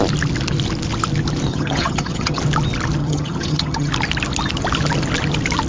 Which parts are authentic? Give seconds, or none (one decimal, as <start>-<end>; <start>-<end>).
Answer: 0.0-1.5; 2.4-3.0; 3.9-5.7